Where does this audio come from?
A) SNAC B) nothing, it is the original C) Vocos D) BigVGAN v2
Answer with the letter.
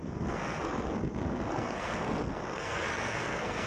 A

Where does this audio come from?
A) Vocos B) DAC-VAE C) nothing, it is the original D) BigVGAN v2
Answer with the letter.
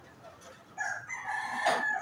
C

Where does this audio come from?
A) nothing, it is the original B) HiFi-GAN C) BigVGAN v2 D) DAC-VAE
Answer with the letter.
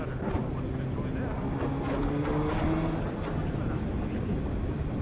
A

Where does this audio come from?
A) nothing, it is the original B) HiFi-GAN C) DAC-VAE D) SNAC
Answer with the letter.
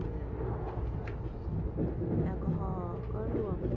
A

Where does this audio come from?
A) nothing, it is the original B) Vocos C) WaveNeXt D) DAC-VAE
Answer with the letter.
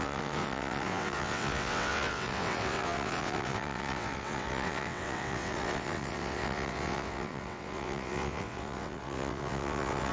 C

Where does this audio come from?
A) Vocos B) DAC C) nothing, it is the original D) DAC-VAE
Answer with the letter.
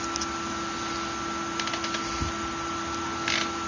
C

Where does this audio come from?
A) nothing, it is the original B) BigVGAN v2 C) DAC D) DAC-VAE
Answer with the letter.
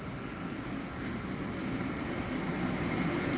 A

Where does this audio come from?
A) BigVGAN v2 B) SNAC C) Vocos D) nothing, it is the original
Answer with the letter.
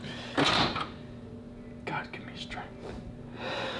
D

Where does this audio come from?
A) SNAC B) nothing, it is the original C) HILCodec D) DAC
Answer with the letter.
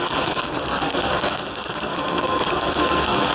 A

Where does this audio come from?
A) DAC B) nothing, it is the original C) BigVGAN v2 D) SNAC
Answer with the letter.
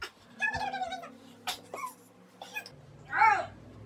B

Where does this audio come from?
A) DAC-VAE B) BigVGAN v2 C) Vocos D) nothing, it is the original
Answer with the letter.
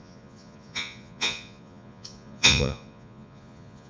C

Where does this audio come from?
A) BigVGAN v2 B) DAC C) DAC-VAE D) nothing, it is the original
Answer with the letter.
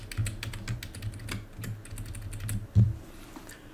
D